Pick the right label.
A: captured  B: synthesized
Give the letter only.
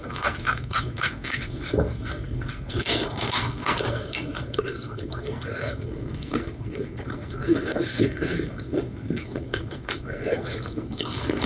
B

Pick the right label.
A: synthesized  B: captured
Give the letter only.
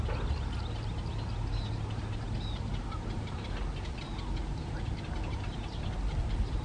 B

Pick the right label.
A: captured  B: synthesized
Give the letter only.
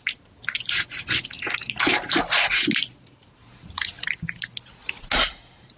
A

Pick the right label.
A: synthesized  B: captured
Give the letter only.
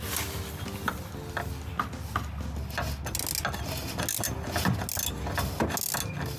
B